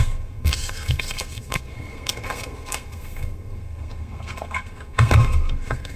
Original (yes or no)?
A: no